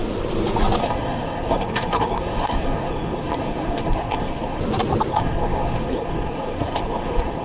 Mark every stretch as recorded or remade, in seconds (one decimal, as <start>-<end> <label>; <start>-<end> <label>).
0.0-0.8 recorded; 0.8-4.6 remade; 4.6-5.1 recorded; 5.1-7.4 remade